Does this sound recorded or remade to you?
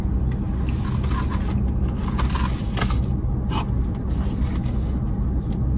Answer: recorded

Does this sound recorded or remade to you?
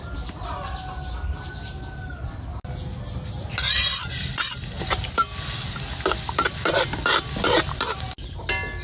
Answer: recorded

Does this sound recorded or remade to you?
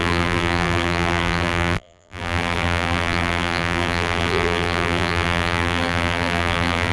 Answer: remade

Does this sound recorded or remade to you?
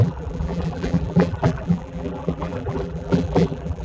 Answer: remade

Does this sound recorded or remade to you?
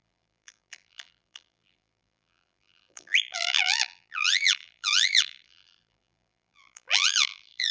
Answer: remade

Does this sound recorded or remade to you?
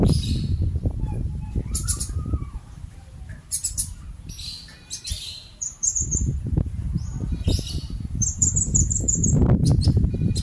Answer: remade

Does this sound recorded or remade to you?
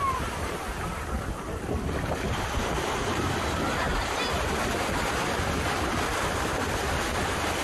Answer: remade